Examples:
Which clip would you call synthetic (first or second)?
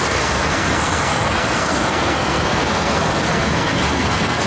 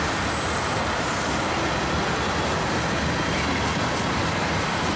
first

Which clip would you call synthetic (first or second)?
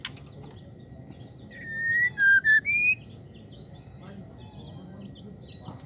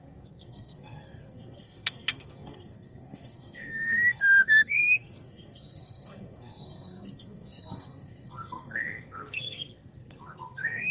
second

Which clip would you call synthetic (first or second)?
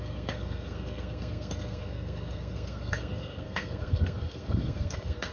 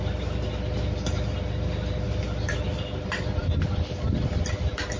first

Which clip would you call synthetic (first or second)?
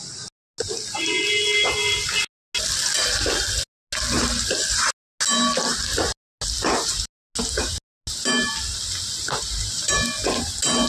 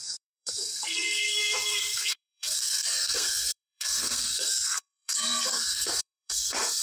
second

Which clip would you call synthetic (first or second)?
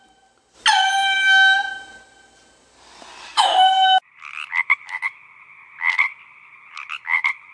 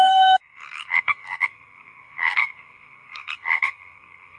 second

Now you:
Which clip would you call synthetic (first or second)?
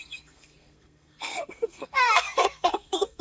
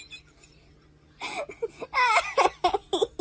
first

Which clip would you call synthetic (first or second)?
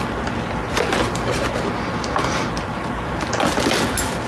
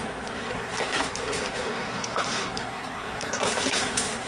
second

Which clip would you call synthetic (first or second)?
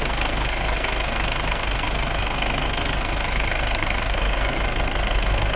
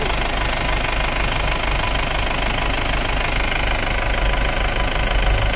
first